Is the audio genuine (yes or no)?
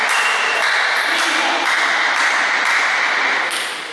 yes